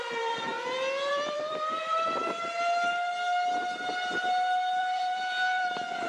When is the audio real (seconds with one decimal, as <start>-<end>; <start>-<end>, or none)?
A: 0.5-1.1; 2.2-4.8